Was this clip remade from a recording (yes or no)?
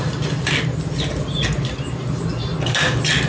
no